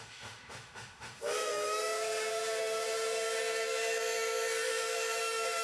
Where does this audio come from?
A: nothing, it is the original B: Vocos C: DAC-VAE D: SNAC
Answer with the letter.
C